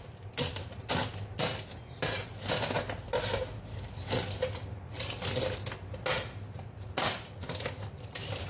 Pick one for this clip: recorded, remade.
recorded